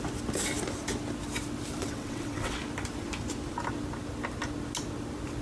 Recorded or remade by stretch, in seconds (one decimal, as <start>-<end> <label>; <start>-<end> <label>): 0.0-1.8 recorded; 1.8-2.6 remade; 2.6-5.4 recorded

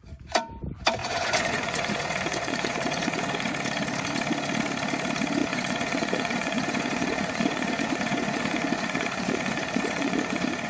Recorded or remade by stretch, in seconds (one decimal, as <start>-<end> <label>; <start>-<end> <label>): 0.0-1.0 recorded; 1.0-3.5 remade; 3.5-5.4 recorded; 5.4-10.7 remade

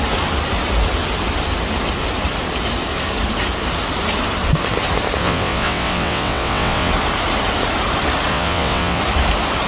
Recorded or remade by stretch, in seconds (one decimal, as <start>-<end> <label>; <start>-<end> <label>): 0.0-5.2 recorded; 5.2-6.9 remade; 6.9-8.3 recorded; 8.3-9.0 remade; 9.0-9.7 recorded

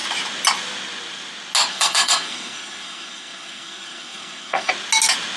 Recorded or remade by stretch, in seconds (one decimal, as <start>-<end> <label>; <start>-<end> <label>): 0.0-1.7 recorded; 1.7-4.7 remade; 4.7-5.4 recorded

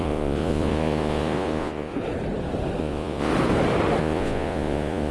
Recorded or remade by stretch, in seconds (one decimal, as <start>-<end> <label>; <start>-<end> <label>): 0.0-1.9 remade; 1.9-2.8 recorded; 2.8-3.3 remade; 3.3-4.0 recorded; 4.0-5.1 remade

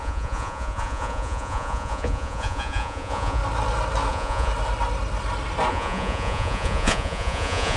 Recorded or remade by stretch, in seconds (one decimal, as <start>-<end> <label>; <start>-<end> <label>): 0.0-3.4 remade; 3.4-4.1 recorded; 4.1-4.5 remade; 4.5-5.7 recorded; 5.7-7.8 remade

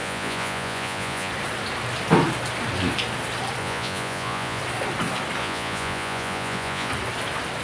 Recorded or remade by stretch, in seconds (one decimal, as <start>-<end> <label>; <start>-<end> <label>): 0.0-1.3 remade; 1.3-3.6 recorded; 3.6-4.6 remade; 4.6-5.4 recorded; 5.4-6.9 remade; 6.9-7.6 recorded